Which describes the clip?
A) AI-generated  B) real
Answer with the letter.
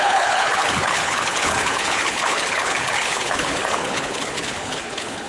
A